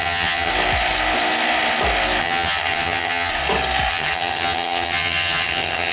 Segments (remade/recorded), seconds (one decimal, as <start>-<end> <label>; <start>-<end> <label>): 0.0-0.5 remade; 0.5-2.2 recorded; 2.2-3.3 remade; 3.3-3.9 recorded; 3.9-5.9 remade